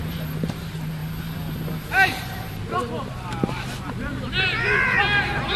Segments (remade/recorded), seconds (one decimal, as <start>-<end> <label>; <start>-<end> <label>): 0.0-1.0 remade; 1.0-4.4 recorded; 4.4-5.6 remade